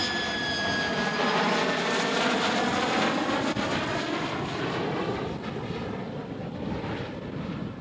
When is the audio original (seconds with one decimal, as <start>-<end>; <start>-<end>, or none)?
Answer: 0.0-7.8